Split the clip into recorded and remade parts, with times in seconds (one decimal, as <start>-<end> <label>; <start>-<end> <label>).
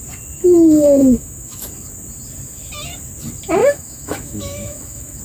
0.0-1.0 recorded; 1.0-1.7 remade; 1.7-3.6 recorded; 3.6-5.2 remade